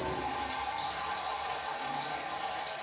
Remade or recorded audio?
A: recorded